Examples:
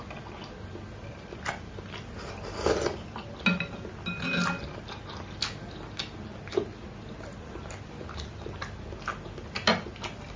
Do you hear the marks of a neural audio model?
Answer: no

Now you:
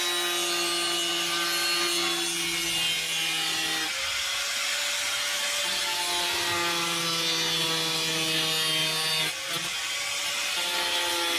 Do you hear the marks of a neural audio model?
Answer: no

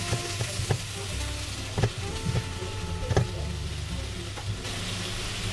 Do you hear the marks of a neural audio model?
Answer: no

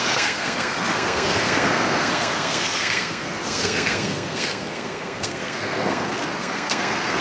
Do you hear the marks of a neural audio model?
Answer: yes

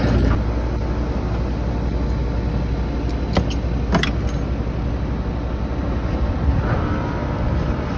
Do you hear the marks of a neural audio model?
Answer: no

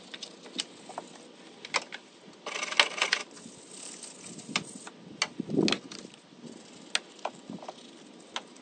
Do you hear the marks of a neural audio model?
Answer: no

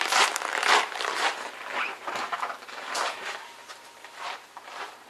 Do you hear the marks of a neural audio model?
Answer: yes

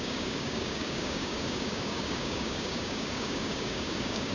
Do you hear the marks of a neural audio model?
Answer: yes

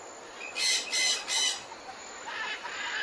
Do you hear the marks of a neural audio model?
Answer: no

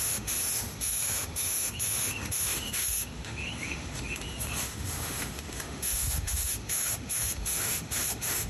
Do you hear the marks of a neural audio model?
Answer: yes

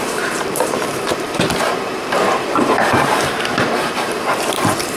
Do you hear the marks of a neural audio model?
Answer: yes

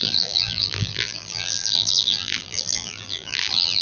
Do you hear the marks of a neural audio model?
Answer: yes